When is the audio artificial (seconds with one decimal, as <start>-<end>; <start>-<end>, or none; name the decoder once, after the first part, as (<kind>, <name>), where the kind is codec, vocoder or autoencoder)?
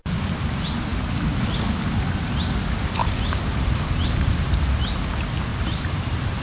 3.0-4.8 (vocoder, BigVGAN v2); 5.5-6.4